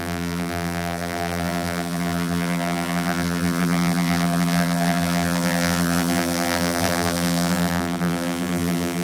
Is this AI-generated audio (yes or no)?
yes